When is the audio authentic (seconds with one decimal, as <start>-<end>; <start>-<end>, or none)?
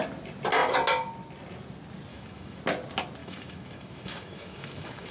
0.0-2.1; 2.6-3.2